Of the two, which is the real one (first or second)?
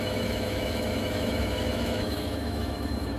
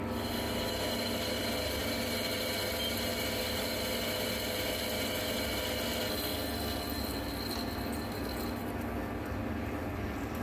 second